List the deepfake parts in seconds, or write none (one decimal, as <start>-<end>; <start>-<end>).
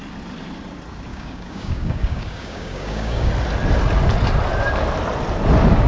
1.1-3.3